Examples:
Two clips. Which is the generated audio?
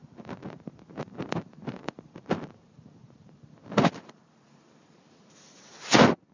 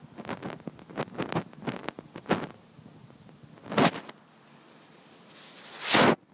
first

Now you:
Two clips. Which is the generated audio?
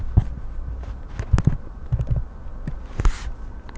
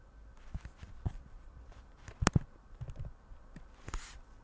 second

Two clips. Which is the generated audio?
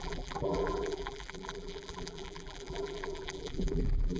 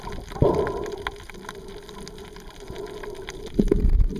first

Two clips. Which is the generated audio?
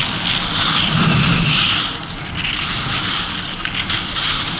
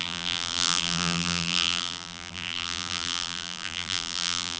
second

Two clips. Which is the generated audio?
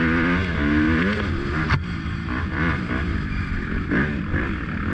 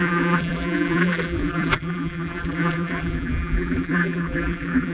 second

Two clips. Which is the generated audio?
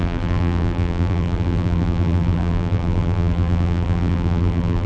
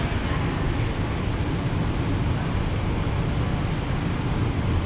first